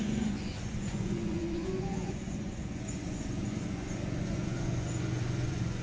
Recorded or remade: remade